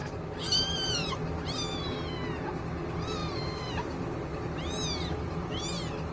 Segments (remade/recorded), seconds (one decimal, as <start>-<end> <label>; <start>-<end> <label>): 0.0-1.1 remade; 1.1-3.2 recorded; 3.2-4.4 remade; 4.4-6.1 recorded